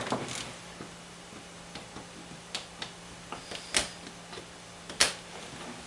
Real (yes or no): yes